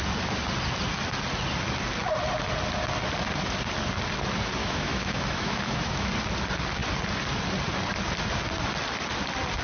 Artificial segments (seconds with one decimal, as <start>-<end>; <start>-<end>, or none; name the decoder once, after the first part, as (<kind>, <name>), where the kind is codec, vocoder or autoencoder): 4.6-6.1 (autoencoder, DAC-VAE)